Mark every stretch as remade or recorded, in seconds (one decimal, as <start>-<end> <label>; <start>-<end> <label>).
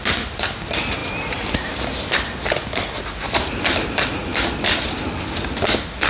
0.0-1.0 recorded; 1.0-3.0 remade; 3.0-6.1 recorded